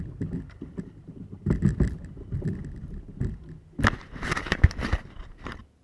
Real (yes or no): yes